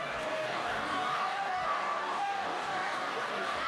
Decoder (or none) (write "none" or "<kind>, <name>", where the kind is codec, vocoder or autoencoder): codec, DAC